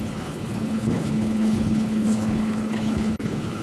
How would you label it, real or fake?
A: fake